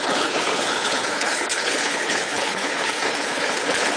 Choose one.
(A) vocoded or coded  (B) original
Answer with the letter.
A